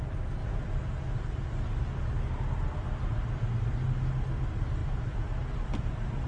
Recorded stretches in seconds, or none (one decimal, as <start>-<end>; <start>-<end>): 0.0-6.3